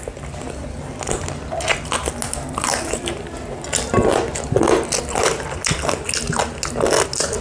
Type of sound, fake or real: real